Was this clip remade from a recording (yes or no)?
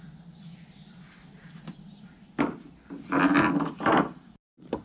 no